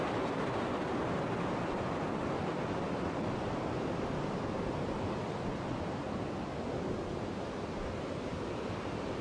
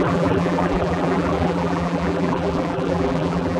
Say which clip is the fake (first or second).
second